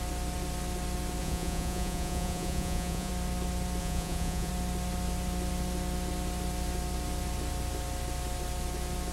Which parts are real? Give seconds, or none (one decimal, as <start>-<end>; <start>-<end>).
0.0-1.2; 3.1-3.8; 4.5-9.1